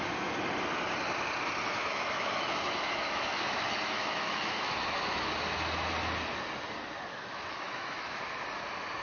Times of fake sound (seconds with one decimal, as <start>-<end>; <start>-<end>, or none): 1.7-5.3; 7.1-8.2